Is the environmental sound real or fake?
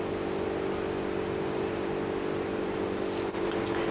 real